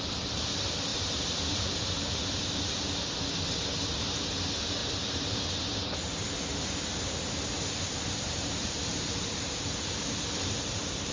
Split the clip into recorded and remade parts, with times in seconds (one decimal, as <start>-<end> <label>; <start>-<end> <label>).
0.0-0.9 recorded; 0.9-2.9 remade; 2.9-4.8 recorded; 4.8-10.0 remade; 10.0-11.1 recorded